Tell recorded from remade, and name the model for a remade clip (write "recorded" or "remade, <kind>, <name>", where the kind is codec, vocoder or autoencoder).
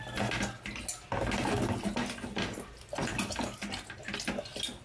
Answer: recorded